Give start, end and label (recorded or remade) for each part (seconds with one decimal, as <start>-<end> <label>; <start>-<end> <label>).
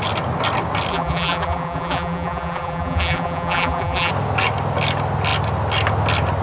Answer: 0.0-0.9 recorded; 0.9-4.1 remade; 4.1-6.4 recorded